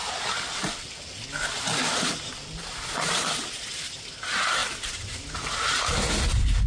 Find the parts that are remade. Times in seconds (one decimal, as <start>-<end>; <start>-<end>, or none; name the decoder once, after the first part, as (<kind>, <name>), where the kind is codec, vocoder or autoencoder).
4.6-6.1 (vocoder, BigVGAN v2)